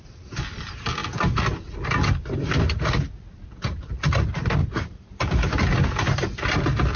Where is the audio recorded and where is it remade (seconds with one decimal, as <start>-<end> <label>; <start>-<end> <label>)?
0.0-4.6 recorded; 4.6-5.6 remade; 5.6-7.0 recorded